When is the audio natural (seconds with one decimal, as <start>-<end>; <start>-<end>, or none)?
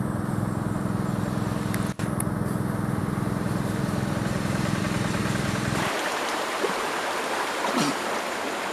0.0-3.0; 4.8-5.2; 8.1-8.7